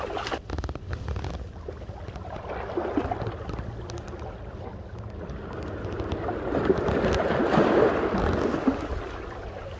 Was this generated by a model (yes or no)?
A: no